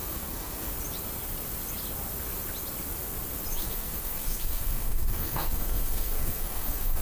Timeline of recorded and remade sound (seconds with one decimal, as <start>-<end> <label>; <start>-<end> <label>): 0.0-0.7 remade; 0.7-3.6 recorded; 3.6-7.0 remade